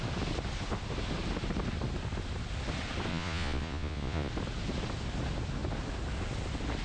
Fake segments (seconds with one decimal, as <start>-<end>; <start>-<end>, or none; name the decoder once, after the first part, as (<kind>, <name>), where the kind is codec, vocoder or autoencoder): 3.1-4.3 (vocoder, Vocos)